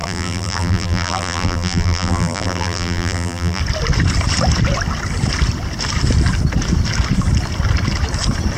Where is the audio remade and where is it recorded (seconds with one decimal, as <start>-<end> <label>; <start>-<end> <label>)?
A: 0.0-3.6 remade; 3.6-8.6 recorded